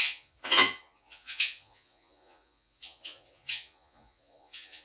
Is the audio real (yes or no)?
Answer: no